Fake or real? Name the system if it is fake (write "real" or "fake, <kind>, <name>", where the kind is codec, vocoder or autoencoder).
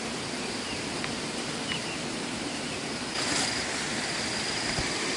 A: real